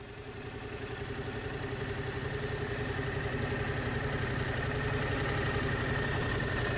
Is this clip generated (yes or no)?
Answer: no